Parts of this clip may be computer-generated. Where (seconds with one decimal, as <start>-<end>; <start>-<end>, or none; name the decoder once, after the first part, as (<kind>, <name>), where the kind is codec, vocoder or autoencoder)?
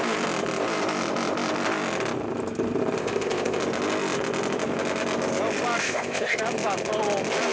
3.0-3.6 (codec, ZipCodec); 5.8-6.4